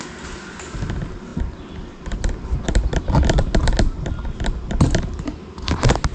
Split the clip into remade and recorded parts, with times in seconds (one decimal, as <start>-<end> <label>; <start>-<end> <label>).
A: 0.0-6.1 recorded